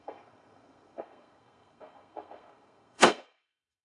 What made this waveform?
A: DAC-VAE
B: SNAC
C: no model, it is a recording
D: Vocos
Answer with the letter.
B